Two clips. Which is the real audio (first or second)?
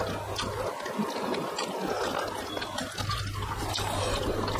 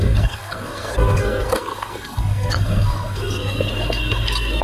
first